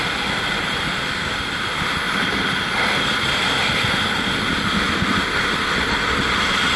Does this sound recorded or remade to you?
recorded